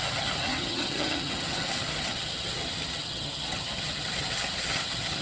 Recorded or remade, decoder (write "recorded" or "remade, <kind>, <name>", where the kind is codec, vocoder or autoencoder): remade, vocoder, HiFi-GAN